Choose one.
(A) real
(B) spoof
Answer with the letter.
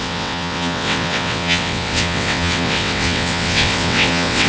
B